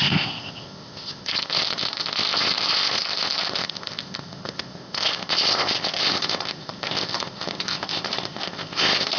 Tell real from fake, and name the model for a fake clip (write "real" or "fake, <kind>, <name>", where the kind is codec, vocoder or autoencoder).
fake, codec, ZipCodec